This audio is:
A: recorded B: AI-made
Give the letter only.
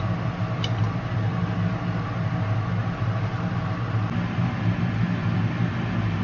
A